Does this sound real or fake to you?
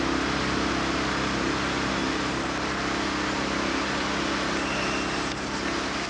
real